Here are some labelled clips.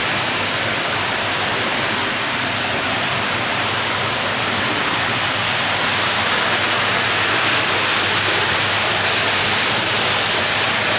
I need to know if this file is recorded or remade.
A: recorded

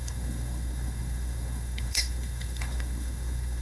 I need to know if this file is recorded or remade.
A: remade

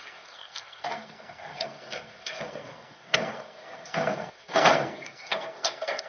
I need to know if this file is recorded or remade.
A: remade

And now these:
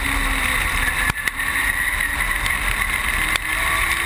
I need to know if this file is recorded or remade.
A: recorded